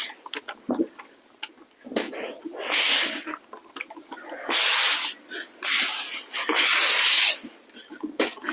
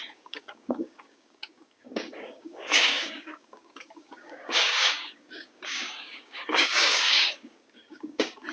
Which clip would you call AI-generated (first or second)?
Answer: second